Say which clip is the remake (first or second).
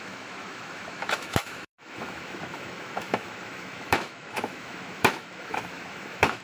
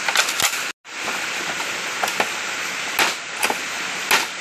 first